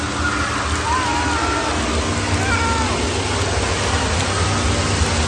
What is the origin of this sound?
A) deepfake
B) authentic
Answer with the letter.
B